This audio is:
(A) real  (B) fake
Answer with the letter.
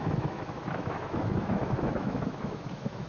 B